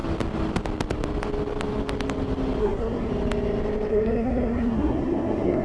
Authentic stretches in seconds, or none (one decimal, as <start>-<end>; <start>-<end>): 0.0-2.6; 3.1-3.9